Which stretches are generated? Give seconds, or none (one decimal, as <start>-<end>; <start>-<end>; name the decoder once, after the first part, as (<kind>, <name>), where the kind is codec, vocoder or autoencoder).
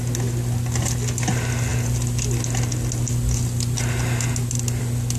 none